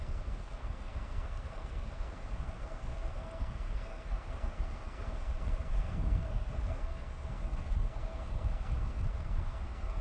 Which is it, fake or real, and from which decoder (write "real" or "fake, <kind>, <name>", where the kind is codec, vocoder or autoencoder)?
fake, codec, SNAC